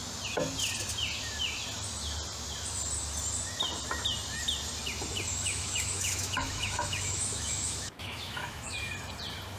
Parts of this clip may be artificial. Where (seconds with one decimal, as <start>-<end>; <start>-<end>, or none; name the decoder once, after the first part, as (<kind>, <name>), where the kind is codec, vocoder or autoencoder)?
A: 5.3-8.9 (autoencoder, DAC-VAE)